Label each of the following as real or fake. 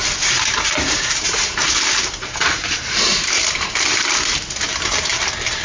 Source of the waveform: fake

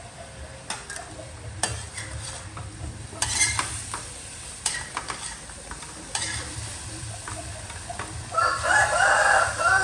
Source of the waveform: fake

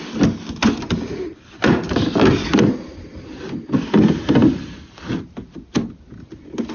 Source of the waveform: real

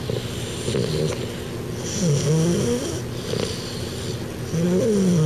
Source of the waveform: real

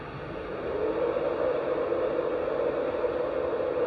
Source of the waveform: real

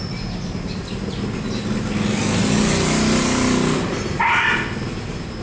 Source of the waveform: real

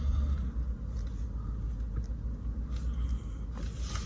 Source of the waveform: real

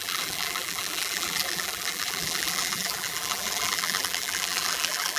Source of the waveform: fake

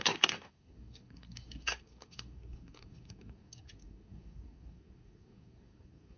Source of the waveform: fake